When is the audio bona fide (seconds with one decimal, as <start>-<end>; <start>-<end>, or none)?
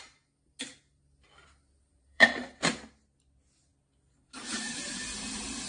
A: 0.0-1.9; 2.6-5.7